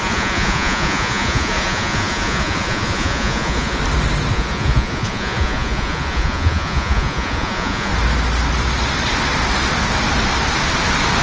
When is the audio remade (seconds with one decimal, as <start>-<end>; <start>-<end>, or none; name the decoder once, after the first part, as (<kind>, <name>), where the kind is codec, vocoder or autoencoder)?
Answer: 0.0-3.8 (vocoder, Vocos); 4.3-7.9

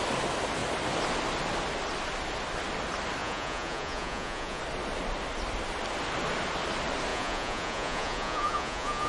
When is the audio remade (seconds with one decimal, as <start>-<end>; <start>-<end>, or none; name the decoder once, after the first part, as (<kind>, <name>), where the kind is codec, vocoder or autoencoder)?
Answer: 3.2-4.6 (vocoder, Vocos); 7.1-9.1

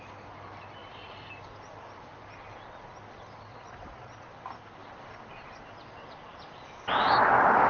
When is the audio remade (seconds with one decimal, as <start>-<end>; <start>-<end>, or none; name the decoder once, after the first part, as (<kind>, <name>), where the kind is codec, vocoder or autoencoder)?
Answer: 3.5-4.3 (vocoder, Vocos)

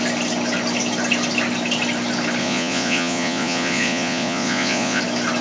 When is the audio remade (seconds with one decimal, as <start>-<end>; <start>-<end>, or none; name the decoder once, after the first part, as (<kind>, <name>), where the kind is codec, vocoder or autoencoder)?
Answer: 2.4-5.0 (vocoder, Vocos)

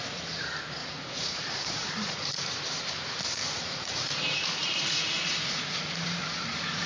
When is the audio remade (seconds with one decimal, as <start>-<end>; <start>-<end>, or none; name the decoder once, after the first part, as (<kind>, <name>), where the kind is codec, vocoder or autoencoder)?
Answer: 0.8-2.7 (vocoder, Vocos); 3.4-6.9